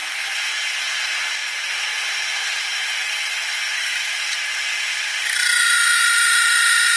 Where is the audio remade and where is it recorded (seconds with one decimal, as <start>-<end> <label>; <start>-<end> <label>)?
0.0-3.9 recorded; 3.9-7.0 remade